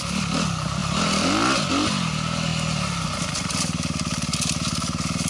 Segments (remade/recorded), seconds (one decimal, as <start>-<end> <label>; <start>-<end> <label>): 0.0-0.8 recorded; 0.8-1.7 remade; 1.7-5.3 recorded